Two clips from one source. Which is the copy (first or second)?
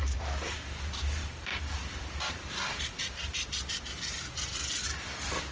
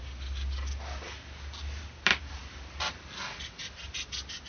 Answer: first